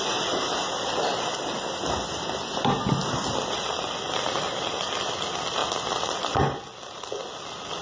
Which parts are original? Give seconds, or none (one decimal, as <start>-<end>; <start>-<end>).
0.0-7.8